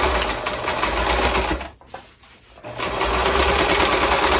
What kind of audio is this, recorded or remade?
recorded